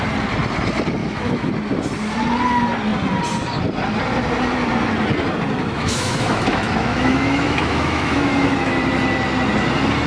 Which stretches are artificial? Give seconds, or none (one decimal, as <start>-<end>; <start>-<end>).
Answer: 1.0-1.5; 5.6-8.7